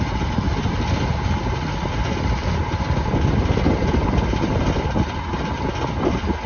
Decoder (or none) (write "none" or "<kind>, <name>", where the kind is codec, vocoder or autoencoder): none